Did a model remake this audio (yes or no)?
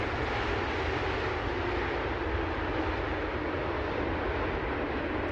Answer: no